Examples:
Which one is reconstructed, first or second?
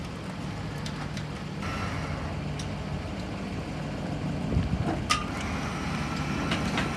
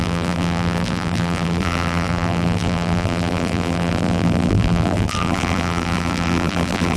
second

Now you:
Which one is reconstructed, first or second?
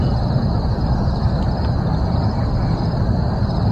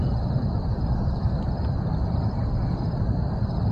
second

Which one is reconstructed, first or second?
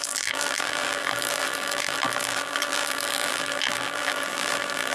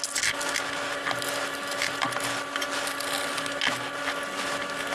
first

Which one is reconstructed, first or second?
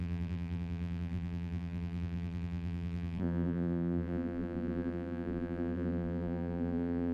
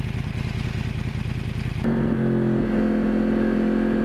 first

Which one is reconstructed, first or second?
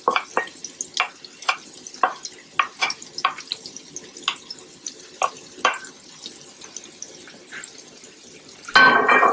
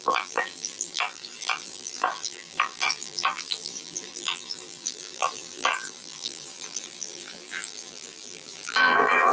second